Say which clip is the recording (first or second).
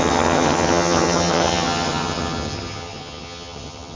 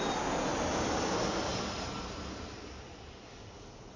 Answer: second